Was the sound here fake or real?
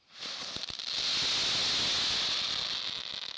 real